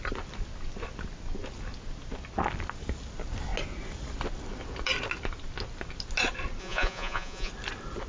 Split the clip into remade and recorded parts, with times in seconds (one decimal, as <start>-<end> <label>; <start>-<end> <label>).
0.0-6.6 recorded; 6.6-7.5 remade; 7.5-8.1 recorded